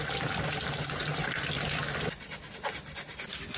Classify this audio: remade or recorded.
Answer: recorded